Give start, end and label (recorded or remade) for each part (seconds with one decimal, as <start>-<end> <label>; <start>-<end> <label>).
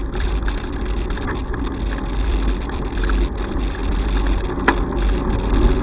0.0-1.4 remade; 1.4-2.3 recorded; 2.3-3.8 remade; 3.8-5.8 recorded